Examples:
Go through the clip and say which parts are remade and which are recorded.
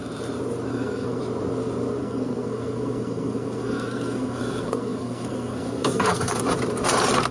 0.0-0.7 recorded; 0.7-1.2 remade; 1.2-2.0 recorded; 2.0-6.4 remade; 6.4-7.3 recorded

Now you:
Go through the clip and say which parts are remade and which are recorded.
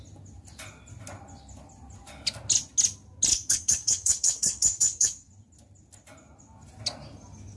0.0-3.3 recorded; 3.3-5.3 remade; 5.3-7.6 recorded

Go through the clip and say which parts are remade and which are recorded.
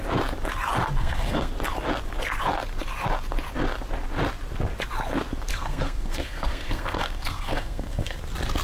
0.0-1.0 recorded; 1.0-1.5 remade; 1.5-5.5 recorded; 5.5-8.2 remade; 8.2-8.6 recorded